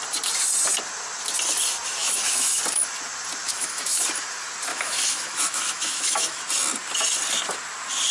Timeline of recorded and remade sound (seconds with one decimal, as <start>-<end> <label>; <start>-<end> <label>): 0.0-2.0 recorded; 2.0-2.6 remade; 2.6-3.4 recorded; 3.4-4.0 remade; 4.0-4.7 recorded; 4.7-6.4 remade; 6.4-8.1 recorded